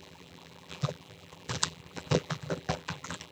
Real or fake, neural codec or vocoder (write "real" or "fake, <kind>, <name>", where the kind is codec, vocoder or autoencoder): fake, vocoder, BigVGAN v2